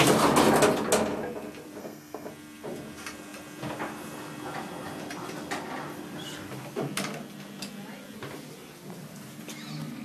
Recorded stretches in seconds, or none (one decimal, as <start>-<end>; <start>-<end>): 0.0-1.8; 2.3-10.0